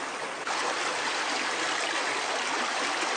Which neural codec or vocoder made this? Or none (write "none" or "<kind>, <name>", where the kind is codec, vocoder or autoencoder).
none